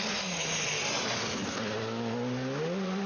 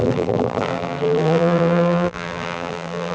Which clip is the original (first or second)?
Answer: first